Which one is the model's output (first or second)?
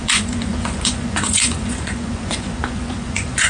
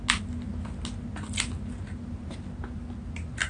first